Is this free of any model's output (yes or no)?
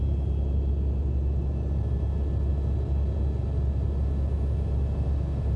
yes